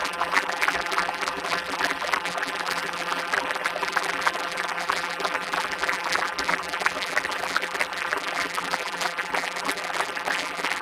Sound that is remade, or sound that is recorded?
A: remade